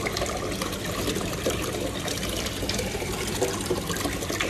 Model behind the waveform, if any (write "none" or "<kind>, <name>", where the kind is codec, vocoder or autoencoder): vocoder, BigVGAN v2